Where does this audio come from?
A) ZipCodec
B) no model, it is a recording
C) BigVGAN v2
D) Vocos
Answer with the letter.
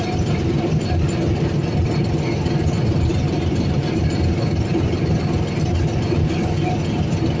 B